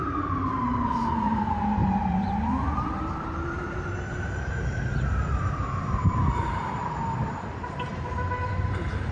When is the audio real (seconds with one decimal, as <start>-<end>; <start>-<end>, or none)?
7.9-8.5